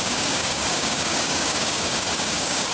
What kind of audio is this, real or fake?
fake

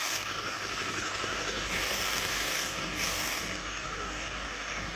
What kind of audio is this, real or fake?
fake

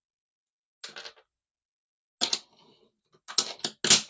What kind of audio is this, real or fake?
real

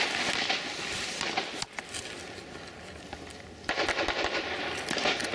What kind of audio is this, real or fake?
real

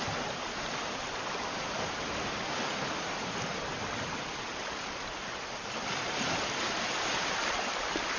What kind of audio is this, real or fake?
real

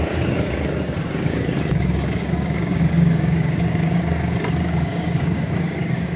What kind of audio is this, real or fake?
fake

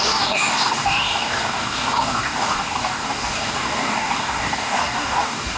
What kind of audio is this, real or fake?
fake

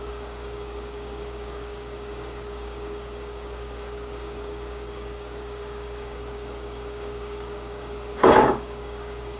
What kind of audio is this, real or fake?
fake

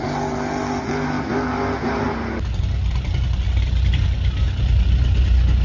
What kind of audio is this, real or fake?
real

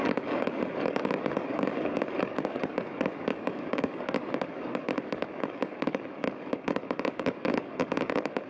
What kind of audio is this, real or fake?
fake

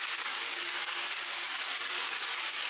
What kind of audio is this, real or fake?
fake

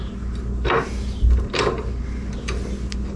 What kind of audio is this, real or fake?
real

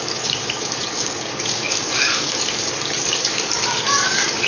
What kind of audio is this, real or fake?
fake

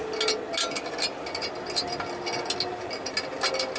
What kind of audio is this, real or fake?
real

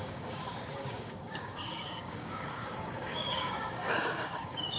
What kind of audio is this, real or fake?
fake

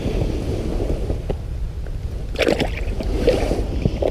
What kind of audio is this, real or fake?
real